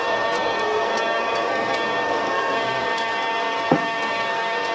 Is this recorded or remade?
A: remade